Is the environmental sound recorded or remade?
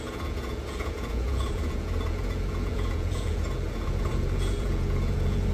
remade